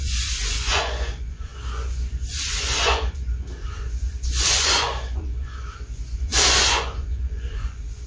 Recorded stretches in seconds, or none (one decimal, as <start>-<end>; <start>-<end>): none

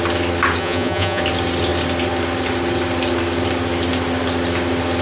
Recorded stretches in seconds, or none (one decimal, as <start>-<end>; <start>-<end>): 0.0-0.6; 1.2-5.0

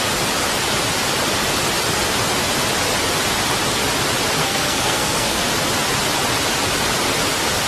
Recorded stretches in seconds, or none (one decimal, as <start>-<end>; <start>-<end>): 0.0-4.4; 5.4-7.7

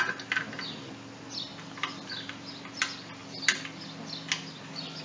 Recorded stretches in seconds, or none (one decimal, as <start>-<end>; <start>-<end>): 0.0-5.0